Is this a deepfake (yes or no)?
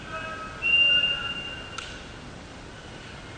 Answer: no